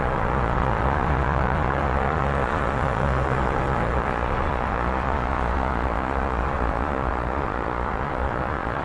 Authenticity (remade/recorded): remade